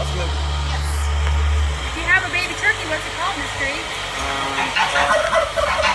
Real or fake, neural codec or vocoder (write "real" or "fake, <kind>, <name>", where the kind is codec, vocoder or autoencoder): real